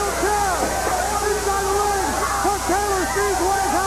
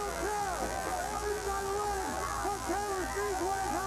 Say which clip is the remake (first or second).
second